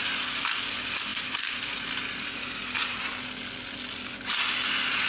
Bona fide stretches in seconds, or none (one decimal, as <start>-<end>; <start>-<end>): 0.0-1.1; 3.1-5.1